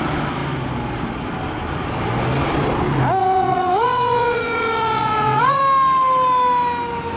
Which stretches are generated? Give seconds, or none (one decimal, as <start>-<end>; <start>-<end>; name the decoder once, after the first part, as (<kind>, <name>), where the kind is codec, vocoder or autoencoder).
3.2-5.6 (vocoder, WaveNeXt)